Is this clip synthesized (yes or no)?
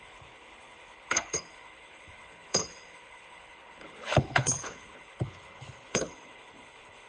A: yes